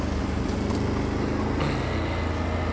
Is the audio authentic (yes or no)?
yes